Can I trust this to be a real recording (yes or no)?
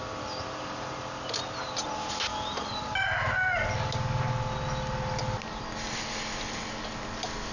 yes